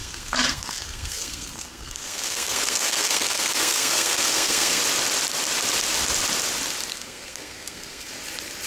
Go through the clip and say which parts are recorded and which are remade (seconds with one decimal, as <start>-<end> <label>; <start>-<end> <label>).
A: 0.0-4.8 remade; 4.8-6.9 recorded; 6.9-8.1 remade; 8.1-8.7 recorded